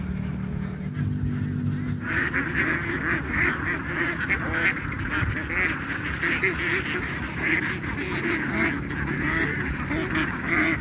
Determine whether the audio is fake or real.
real